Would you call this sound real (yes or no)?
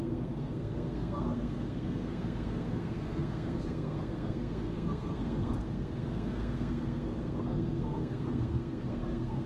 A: no